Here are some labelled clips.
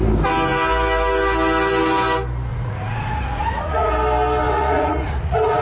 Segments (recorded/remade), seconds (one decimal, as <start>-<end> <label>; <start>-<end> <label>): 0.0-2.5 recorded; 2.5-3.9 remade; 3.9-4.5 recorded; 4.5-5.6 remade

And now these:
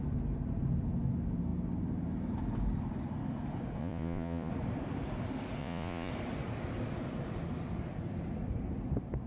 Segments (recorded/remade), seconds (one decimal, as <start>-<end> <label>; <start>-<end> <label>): 0.0-3.8 recorded; 3.8-4.5 remade; 4.5-5.6 recorded; 5.6-6.1 remade; 6.1-9.3 recorded

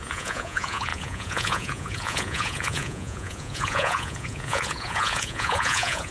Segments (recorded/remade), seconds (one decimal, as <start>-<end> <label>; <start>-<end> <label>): 0.0-6.1 remade

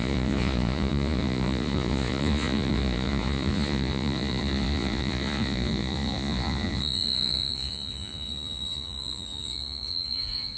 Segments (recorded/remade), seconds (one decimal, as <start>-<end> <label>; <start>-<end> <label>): 0.0-10.6 remade